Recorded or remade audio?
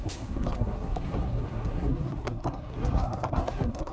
remade